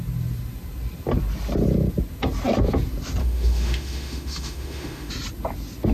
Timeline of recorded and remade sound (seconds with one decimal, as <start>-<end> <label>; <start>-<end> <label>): 0.0-3.2 recorded; 3.2-5.1 remade; 5.1-5.9 recorded